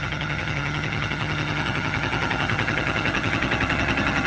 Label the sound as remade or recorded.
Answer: remade